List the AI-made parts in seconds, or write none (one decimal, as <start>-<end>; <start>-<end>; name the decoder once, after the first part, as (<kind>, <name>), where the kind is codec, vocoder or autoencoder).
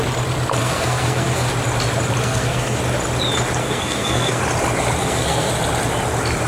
0.6-1.5 (codec, SNAC); 2.2-2.8; 3.6-4.4; 5.0-5.5